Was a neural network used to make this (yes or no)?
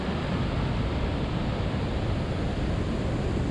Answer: no